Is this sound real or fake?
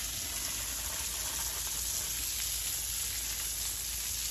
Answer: real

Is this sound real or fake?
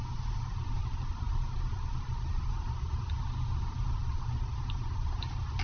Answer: real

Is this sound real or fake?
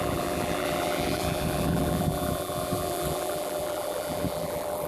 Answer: fake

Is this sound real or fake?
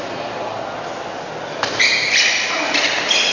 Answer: real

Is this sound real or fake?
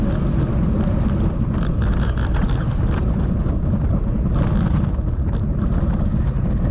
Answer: real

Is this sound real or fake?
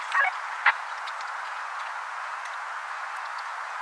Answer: fake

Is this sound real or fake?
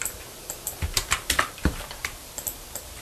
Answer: fake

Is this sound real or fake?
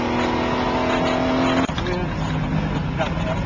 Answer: real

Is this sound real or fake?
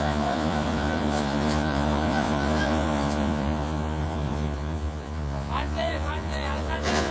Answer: fake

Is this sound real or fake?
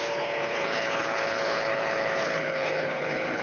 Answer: fake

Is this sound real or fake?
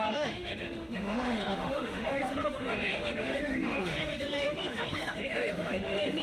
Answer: fake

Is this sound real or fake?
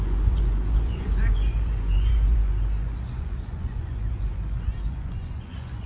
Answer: fake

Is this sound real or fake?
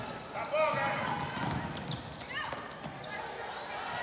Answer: real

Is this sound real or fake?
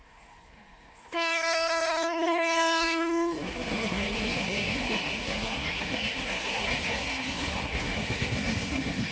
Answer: fake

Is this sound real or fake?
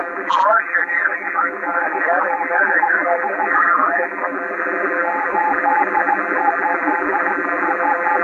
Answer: fake